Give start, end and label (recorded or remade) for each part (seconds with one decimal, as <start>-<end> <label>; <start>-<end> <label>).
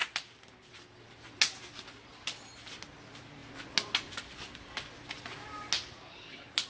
0.0-6.7 recorded